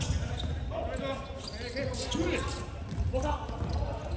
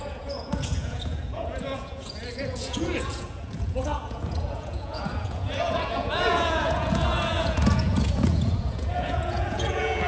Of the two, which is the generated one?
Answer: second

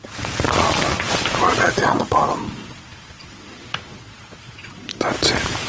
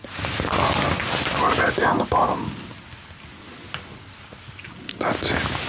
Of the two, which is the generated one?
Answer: first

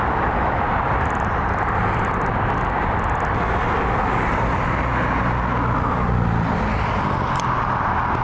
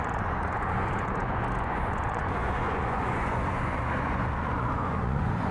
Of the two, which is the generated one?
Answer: second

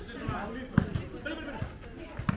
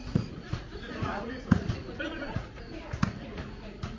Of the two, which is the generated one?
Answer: second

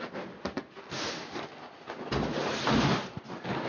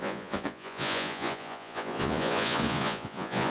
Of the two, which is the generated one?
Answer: second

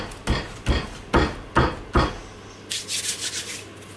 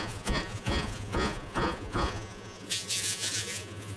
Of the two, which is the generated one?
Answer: second